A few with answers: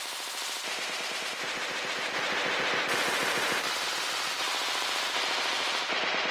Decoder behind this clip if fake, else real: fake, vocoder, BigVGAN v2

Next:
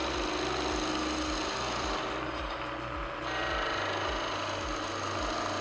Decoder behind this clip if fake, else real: real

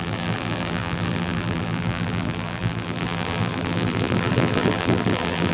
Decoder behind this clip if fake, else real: fake, vocoder, BigVGAN v2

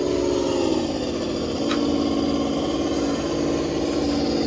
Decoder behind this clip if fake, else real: real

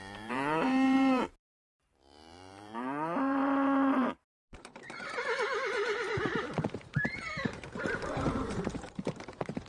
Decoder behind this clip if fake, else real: fake, vocoder, BigVGAN v2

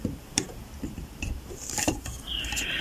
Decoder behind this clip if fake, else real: fake, vocoder, BigVGAN v2